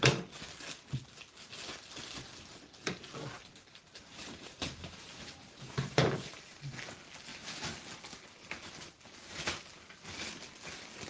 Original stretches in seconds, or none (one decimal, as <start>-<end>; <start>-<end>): 0.0-3.4; 6.6-11.1